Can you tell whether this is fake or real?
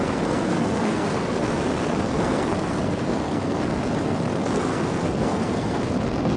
fake